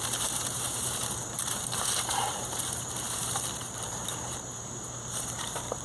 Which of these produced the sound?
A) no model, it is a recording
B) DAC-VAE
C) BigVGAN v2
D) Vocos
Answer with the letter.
C